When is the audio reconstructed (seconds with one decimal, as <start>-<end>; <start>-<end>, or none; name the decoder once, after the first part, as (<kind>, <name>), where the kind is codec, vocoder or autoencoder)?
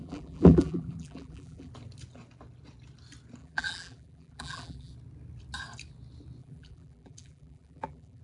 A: 0.0-1.7 (vocoder, BigVGAN v2); 3.4-4.9; 6.4-8.2